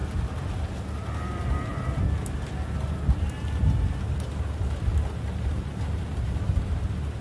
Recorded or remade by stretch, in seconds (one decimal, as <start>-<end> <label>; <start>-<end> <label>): 0.0-0.8 remade; 0.8-7.2 recorded